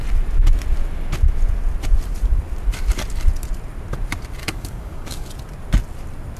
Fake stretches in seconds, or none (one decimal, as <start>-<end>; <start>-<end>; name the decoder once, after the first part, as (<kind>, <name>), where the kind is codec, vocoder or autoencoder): 4.4-5.3 (codec, DAC)